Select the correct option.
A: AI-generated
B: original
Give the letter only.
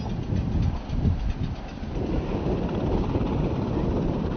B